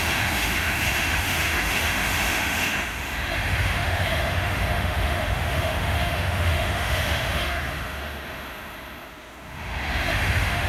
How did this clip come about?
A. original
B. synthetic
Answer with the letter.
B